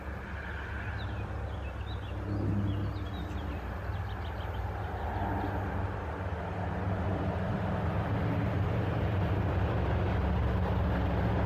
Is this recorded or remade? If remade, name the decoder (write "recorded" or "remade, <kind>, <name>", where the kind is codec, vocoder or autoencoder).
recorded